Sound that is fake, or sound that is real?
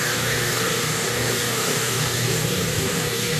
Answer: fake